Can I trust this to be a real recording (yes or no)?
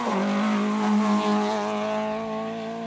yes